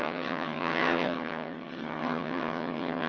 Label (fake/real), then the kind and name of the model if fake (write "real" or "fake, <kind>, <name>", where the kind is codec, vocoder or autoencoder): fake, vocoder, HiFi-GAN